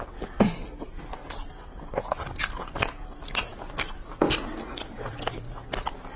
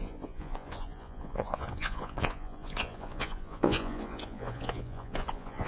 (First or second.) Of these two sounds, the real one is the first